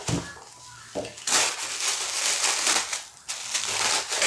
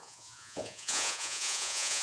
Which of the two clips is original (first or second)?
first